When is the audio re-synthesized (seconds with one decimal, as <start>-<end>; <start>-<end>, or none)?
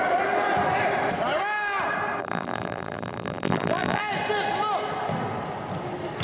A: 2.2-4.0